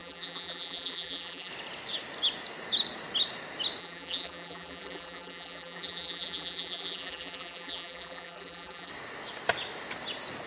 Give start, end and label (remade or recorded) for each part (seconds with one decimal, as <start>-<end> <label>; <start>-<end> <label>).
0.0-1.5 remade; 1.5-3.8 recorded; 3.8-8.9 remade; 8.9-10.5 recorded